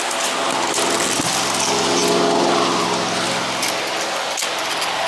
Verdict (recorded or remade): recorded